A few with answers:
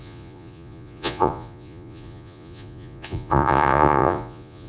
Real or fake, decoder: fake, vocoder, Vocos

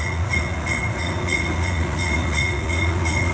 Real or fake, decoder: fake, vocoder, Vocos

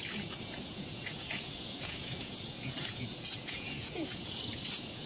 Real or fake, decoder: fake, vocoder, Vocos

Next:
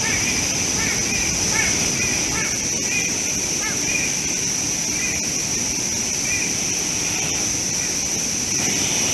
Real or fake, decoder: real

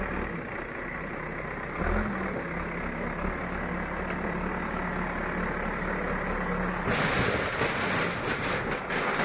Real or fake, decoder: real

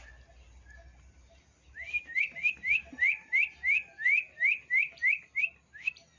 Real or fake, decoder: real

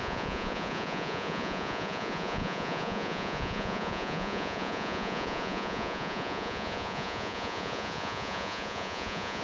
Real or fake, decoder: fake, vocoder, Vocos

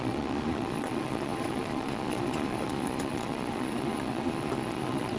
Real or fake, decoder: fake, vocoder, Vocos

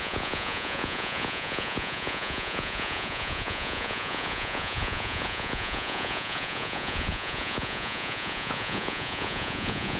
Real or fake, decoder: fake, vocoder, Vocos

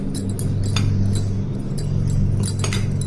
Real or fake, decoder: real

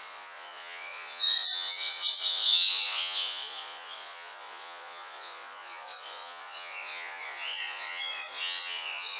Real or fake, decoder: fake, vocoder, Vocos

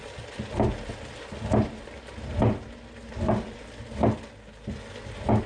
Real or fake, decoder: real